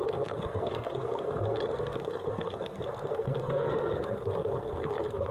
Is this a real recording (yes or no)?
no